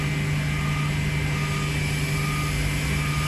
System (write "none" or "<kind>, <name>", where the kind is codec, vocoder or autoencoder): none